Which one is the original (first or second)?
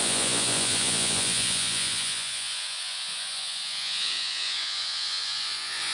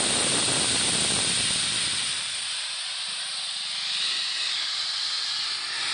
second